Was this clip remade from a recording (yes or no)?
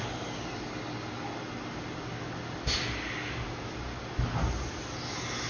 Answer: no